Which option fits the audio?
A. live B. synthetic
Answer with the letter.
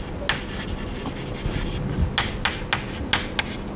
A